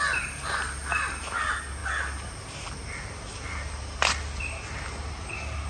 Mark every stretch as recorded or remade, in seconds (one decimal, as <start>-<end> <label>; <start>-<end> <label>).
0.0-5.7 recorded